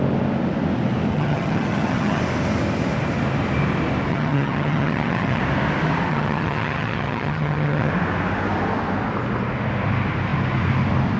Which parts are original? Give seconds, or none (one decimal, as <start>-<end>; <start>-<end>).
0.0-1.1; 2.2-4.1; 5.4-6.1; 7.9-11.2